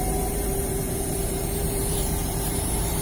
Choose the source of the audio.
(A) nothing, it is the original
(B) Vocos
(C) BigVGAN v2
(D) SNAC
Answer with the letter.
C